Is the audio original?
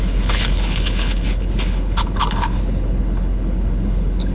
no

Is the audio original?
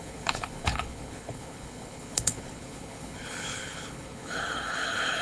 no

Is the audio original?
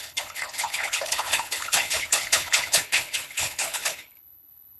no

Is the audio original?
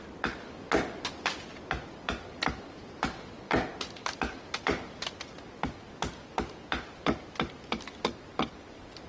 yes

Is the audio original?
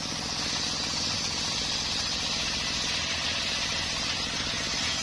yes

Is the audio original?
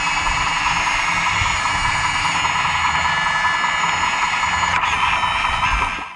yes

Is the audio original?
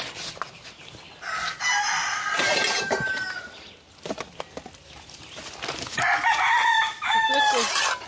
yes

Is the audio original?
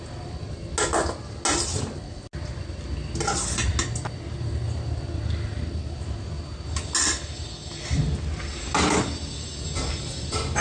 yes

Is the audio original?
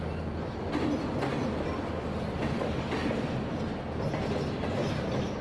yes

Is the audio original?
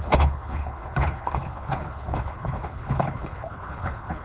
no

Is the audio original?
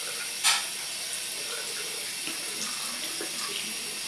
yes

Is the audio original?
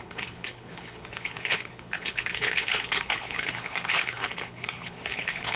no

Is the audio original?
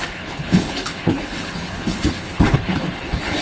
no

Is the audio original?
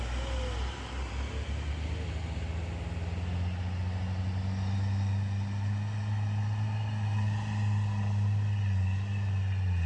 yes